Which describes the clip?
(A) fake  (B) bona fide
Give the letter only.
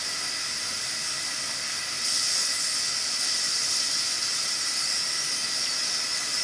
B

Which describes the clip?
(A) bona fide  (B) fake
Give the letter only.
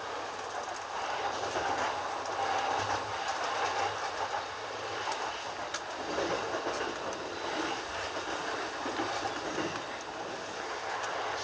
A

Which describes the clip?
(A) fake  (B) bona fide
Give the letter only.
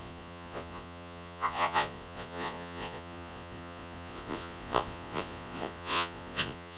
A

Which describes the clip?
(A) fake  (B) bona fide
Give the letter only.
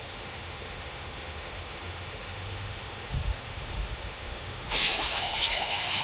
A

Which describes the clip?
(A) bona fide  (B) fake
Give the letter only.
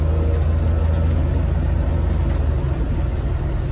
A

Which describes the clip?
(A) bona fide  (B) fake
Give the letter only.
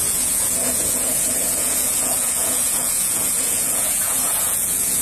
B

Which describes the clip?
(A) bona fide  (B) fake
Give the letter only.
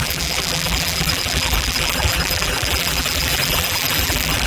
B